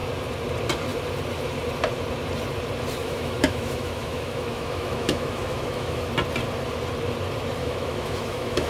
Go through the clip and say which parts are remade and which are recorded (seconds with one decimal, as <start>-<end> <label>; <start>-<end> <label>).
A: 0.0-3.0 recorded; 3.0-6.1 remade; 6.1-7.6 recorded; 7.6-8.7 remade